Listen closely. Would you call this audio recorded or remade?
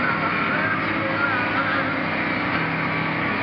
recorded